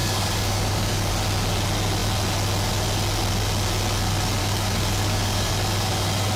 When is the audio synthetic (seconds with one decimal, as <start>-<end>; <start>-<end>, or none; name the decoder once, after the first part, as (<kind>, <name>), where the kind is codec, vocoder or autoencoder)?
0.0-1.1 (codec, DAC); 4.4-5.5